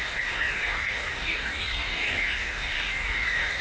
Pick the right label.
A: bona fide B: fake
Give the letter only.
B